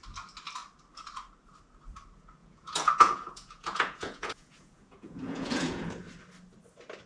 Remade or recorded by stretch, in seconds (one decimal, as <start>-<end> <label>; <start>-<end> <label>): 0.0-2.4 recorded; 2.4-5.9 remade; 5.9-7.1 recorded